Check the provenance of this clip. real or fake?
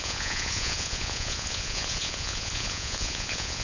fake